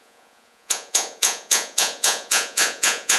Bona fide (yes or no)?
no